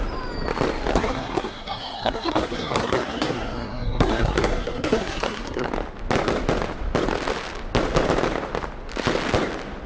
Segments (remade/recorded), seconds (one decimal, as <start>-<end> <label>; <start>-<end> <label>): 0.0-0.9 recorded; 0.9-5.7 remade; 5.7-9.9 recorded